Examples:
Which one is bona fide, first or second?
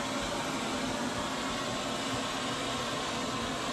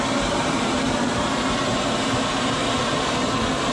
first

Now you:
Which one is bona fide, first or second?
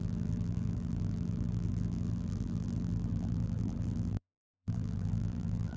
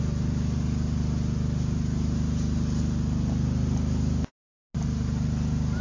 second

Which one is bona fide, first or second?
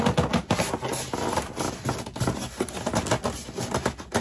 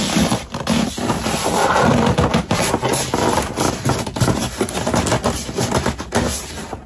first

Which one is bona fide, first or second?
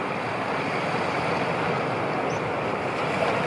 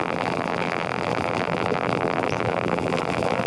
first